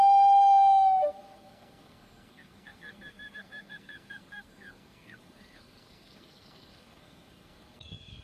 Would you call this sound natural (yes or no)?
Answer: no